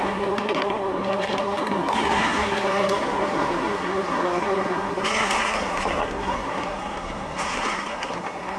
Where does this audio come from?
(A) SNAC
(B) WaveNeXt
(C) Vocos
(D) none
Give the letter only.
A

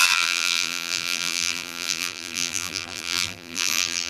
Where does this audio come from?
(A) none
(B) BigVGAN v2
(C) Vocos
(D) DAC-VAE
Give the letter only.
B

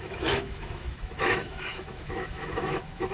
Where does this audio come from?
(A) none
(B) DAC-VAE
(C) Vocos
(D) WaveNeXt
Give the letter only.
B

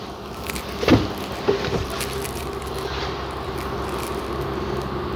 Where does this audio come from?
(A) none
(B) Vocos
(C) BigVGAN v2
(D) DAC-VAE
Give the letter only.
A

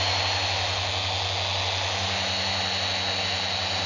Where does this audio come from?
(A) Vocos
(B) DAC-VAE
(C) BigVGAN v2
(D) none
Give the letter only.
D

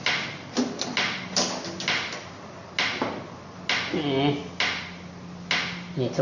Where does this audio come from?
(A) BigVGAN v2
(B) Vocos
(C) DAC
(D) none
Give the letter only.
D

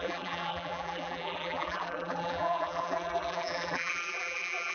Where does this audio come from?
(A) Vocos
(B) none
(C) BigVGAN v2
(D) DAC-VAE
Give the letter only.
C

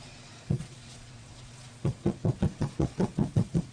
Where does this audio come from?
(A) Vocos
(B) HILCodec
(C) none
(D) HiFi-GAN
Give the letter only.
A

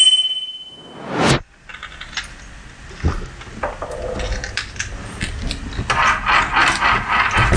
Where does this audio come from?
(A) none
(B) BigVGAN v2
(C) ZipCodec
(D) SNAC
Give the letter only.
A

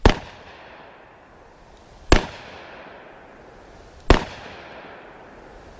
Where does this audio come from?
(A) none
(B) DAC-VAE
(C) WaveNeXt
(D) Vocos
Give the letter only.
A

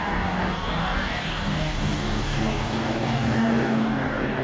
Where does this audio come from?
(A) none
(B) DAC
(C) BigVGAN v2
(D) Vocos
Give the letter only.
B